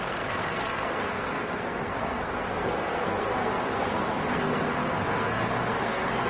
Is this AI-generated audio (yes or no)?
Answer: yes